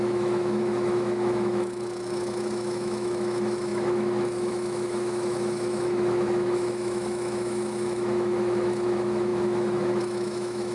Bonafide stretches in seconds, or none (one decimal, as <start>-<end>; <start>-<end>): none